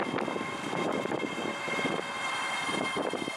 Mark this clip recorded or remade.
recorded